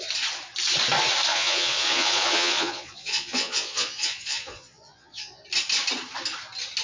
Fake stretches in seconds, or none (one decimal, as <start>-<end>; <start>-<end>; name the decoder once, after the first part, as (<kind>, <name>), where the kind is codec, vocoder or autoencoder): 1.3-5.4 (vocoder, Vocos)